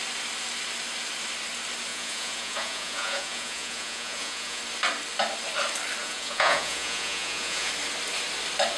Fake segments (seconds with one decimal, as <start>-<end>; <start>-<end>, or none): 1.9-4.6; 6.0-7.7